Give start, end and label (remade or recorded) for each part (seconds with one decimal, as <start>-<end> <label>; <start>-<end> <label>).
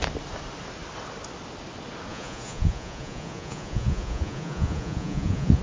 0.0-2.1 recorded; 2.1-5.6 remade